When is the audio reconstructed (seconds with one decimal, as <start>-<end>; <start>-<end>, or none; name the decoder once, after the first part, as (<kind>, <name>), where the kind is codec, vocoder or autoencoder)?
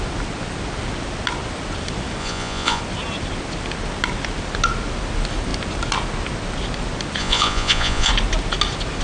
2.2-2.8 (vocoder, Vocos); 7.2-8.1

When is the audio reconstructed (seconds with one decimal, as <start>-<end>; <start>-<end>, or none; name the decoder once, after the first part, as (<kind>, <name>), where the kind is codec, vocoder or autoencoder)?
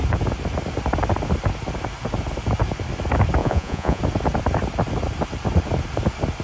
3.4-4.0 (vocoder, Vocos)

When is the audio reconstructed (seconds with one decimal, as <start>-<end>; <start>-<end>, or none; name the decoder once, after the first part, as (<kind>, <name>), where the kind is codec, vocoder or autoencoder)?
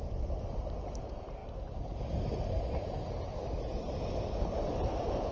none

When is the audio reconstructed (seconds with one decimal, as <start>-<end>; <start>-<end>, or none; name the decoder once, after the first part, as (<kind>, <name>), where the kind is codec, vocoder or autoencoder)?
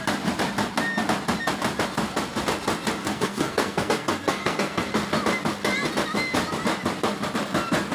3.0-4.9 (codec, SNAC)